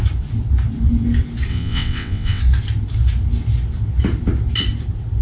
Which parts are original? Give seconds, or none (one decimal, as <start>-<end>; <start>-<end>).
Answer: 0.0-1.5; 2.4-5.2

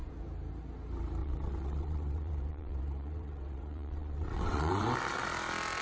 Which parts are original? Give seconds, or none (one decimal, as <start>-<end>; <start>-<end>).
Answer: 0.0-1.2; 4.7-5.8

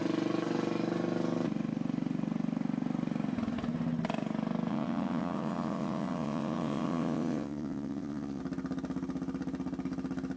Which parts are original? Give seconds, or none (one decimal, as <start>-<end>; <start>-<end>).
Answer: 0.0-4.7; 8.4-10.4

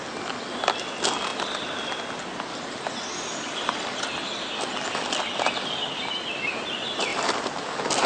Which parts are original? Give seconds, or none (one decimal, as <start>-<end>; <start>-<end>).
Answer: 0.0-8.1